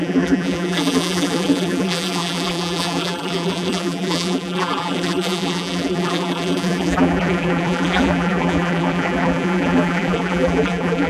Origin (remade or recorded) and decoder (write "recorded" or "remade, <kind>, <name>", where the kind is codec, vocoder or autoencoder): remade, vocoder, BigVGAN v2